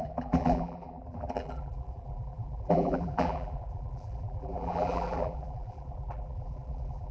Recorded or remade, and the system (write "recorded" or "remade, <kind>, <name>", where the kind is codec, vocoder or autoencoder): remade, vocoder, BigVGAN v2